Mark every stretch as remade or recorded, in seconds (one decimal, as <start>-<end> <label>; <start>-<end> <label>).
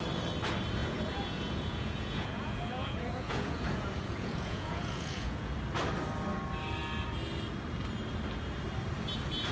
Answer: 0.0-0.8 recorded; 0.8-5.6 remade; 5.6-9.5 recorded